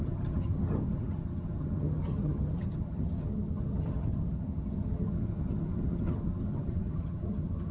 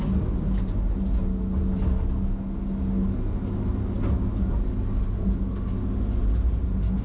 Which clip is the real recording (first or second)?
second